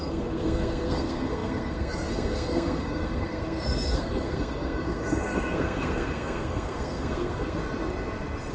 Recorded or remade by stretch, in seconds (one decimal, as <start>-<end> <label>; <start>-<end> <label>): 0.0-7.6 remade; 7.6-8.5 recorded